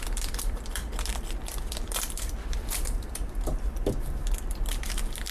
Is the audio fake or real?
fake